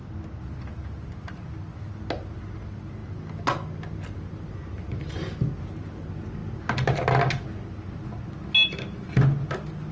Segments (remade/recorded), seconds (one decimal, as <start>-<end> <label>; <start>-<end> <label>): 0.0-9.9 recorded